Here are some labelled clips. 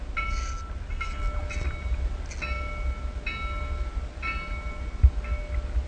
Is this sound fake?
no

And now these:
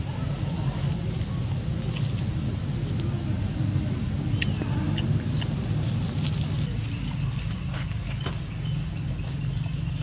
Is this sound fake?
no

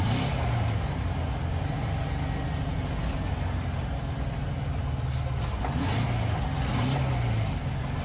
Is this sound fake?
no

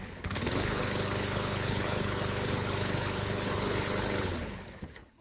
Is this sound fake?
yes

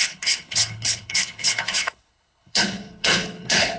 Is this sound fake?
yes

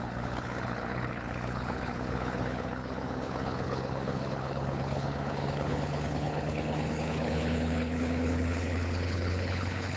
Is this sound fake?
yes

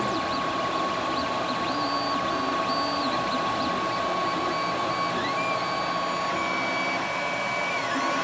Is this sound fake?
no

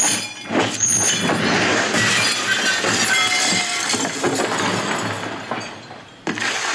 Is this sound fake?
no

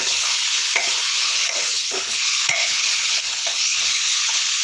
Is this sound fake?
yes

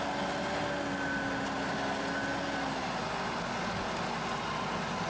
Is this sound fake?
no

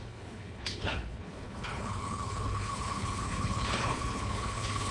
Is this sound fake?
yes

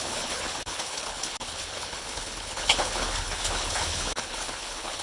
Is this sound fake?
yes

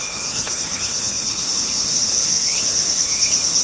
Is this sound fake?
yes